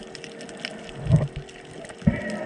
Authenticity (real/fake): real